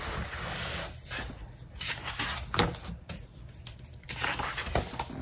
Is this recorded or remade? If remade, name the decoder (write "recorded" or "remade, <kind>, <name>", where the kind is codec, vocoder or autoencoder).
recorded